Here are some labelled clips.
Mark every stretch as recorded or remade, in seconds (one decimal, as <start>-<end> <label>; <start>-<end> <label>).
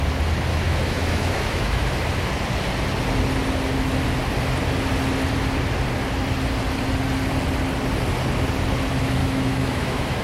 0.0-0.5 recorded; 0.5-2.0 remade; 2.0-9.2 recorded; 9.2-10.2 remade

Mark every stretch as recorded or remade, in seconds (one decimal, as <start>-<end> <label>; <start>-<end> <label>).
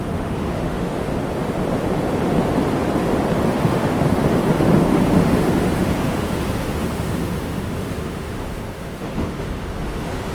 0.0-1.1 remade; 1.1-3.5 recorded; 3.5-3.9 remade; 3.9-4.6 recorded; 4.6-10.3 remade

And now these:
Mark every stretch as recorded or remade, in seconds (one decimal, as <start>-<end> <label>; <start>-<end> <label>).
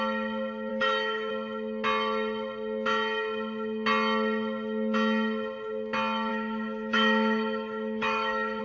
0.0-0.7 recorded; 0.7-1.3 remade; 1.3-6.3 recorded; 6.3-8.6 remade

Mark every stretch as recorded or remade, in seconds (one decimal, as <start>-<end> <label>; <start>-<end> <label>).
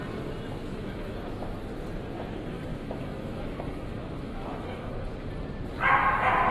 0.0-0.6 recorded; 0.6-1.2 remade; 1.2-2.7 recorded; 2.7-4.9 remade; 4.9-6.5 recorded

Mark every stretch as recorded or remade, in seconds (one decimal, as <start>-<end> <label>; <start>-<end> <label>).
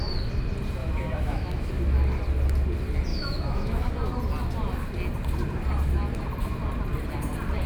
0.0-0.8 recorded; 0.8-1.7 remade; 1.7-3.1 recorded; 3.1-3.9 remade; 3.9-7.7 recorded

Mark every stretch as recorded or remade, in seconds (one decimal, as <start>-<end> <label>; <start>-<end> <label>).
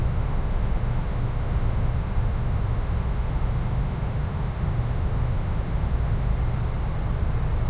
0.0-6.3 remade; 6.3-7.7 recorded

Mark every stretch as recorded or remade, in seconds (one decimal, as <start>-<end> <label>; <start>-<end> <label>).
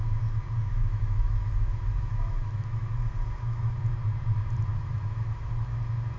0.0-0.7 recorded; 0.7-3.8 remade; 3.8-4.7 recorded; 4.7-5.8 remade; 5.8-6.2 recorded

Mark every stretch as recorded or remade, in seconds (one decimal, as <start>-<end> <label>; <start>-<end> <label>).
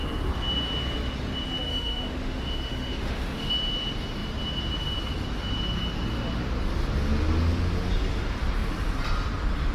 0.0-1.7 recorded; 1.7-3.5 remade; 3.5-9.7 recorded